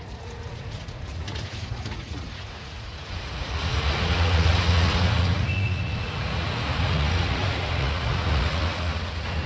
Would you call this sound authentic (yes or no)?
no